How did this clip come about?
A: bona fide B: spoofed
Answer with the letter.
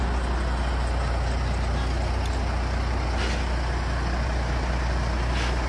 A